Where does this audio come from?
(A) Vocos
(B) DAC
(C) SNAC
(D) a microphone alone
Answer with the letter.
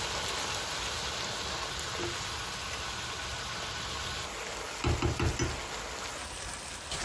D